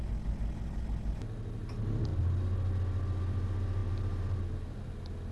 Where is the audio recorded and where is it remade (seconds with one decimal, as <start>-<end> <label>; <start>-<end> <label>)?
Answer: 0.0-5.3 recorded